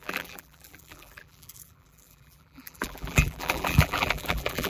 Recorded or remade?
remade